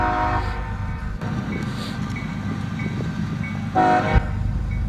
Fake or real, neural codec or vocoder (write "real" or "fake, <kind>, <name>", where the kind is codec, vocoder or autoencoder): real